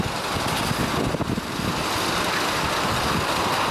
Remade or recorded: recorded